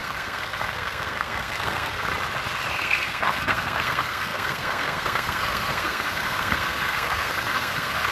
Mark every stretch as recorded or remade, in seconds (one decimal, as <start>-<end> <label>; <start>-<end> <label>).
0.0-2.1 remade; 2.1-2.7 recorded; 2.7-8.1 remade